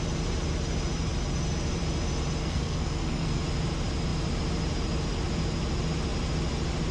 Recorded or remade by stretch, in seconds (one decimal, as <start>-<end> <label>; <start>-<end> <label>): 0.0-2.4 recorded; 2.4-3.4 remade; 3.4-6.9 recorded